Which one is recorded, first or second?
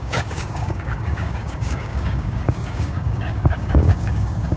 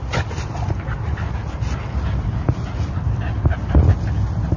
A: second